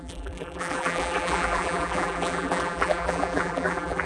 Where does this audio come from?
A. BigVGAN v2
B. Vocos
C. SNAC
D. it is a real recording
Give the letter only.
A